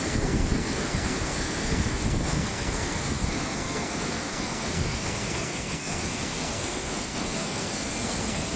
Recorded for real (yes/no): no